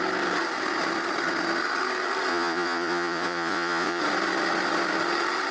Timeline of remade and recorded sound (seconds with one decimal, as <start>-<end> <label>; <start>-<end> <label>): 0.0-2.3 recorded; 2.3-4.0 remade; 4.0-5.5 recorded